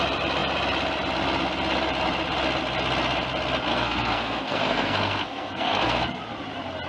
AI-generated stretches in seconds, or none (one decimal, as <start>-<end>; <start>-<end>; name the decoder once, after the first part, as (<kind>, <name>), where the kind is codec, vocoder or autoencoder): 3.7-6.2 (codec, SNAC)